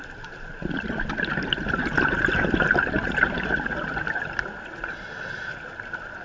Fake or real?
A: real